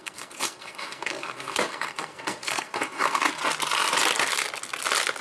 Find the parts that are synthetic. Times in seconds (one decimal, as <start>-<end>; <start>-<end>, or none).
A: 0.0-3.4